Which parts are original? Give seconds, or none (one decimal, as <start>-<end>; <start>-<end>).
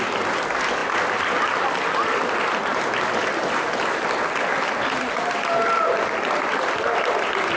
0.0-7.6